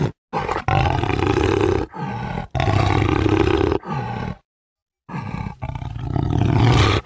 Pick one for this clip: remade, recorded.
recorded